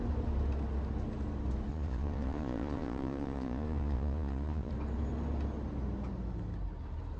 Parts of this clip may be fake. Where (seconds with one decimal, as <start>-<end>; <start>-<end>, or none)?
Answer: 1.7-4.7